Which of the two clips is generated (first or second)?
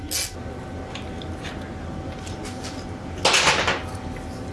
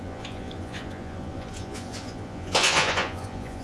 second